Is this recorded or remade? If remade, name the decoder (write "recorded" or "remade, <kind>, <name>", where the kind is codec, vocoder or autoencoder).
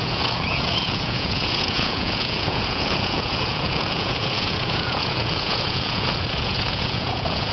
remade, vocoder, Vocos